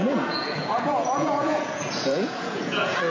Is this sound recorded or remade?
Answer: remade